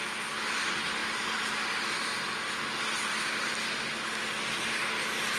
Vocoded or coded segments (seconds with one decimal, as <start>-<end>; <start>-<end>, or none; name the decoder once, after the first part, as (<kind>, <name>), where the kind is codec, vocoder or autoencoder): none